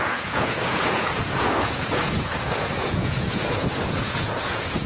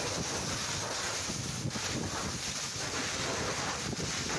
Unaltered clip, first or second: second